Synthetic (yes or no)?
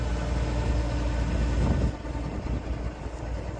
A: no